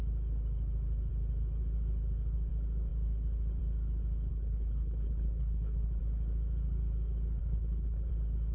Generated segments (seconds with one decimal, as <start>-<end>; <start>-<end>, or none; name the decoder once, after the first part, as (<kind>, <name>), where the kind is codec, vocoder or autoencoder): 4.3-6.0 (codec, HILCodec); 7.4-8.1